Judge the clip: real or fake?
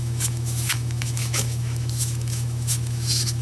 fake